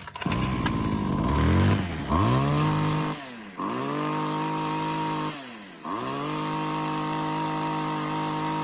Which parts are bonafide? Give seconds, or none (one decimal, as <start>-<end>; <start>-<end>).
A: 0.0-8.6